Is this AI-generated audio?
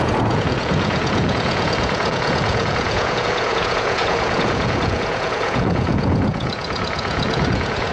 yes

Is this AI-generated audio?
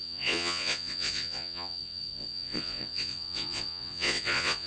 yes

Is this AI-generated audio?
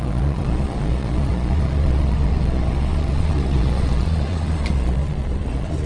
yes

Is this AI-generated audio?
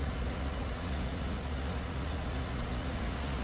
yes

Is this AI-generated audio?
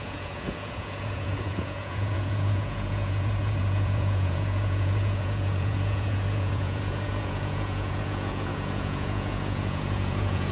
yes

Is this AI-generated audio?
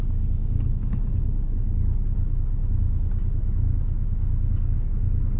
no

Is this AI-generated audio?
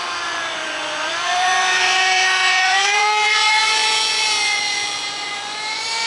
yes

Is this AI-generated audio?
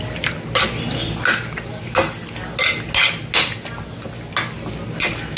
no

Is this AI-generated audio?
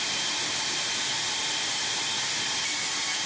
no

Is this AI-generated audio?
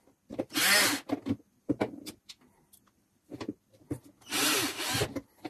no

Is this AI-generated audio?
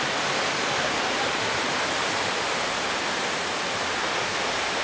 no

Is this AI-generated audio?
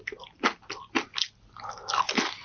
no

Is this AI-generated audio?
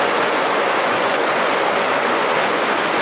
yes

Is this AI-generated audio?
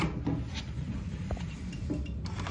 no